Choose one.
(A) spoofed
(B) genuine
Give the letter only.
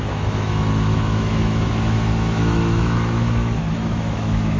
A